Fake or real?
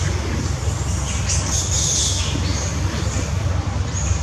real